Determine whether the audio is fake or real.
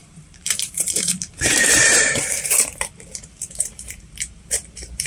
fake